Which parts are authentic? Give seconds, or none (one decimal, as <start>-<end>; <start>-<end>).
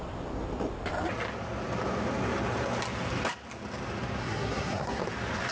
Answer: 0.0-4.2; 5.0-5.5